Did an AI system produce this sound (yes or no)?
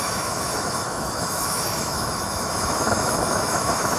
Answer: yes